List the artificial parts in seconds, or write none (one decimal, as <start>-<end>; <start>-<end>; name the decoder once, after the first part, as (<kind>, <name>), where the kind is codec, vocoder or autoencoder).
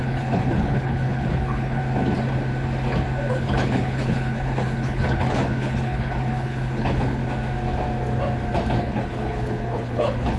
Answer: 0.0-1.8 (codec, HILCodec); 3.3-7.2; 8.8-10.4